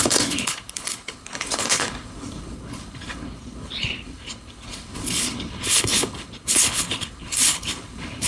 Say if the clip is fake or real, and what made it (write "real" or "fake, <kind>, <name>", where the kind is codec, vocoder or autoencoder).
fake, codec, HILCodec